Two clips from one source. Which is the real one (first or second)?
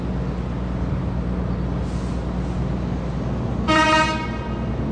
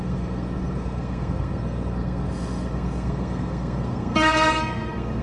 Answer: first